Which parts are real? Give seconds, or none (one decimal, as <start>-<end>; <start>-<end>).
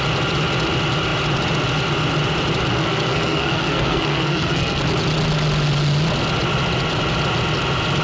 0.0-2.7; 4.8-8.0